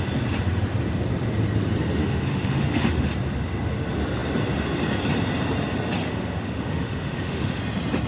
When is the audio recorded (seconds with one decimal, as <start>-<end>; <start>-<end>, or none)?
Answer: 0.0-2.0; 3.0-6.0; 7.6-8.1